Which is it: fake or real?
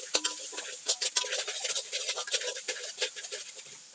real